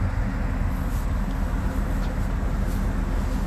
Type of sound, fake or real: real